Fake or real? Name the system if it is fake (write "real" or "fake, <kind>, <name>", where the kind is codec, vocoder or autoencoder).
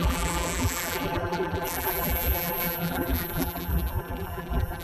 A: fake, vocoder, BigVGAN v2